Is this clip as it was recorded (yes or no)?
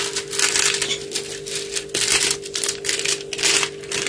yes